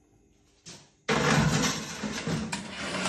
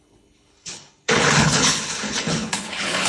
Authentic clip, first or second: first